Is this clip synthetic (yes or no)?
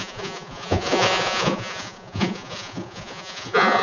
yes